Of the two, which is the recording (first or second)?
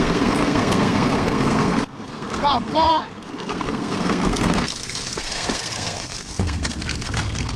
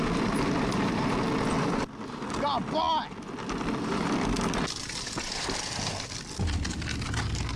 second